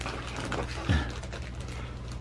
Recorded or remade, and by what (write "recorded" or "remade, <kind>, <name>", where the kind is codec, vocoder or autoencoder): recorded